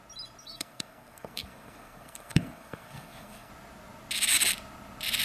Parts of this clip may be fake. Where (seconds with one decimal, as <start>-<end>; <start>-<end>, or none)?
0.4-3.5

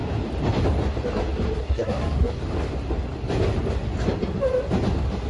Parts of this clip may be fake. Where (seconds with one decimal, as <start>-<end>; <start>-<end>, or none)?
1.6-2.3

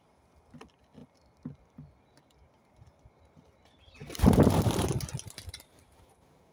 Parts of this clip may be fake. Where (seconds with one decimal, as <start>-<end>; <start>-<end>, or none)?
none

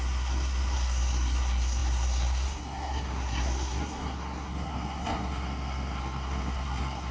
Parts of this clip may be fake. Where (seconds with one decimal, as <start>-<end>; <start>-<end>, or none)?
0.0-7.1

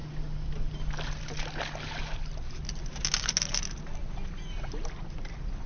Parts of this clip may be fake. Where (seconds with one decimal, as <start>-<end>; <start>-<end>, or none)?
none

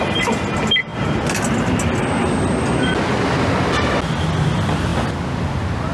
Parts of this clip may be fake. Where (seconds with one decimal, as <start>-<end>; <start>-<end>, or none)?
none

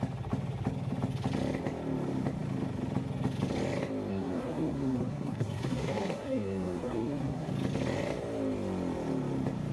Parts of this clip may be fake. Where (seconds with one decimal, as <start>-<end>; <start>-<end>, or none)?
4.1-7.5